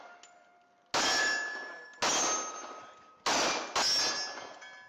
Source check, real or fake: real